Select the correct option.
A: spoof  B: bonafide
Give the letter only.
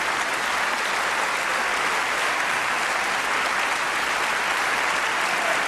B